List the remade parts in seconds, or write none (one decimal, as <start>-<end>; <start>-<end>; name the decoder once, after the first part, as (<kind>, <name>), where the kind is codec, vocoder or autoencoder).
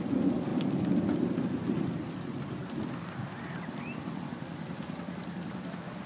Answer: none